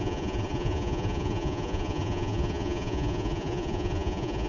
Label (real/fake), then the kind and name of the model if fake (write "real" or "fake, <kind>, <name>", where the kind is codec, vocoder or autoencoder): fake, vocoder, Vocos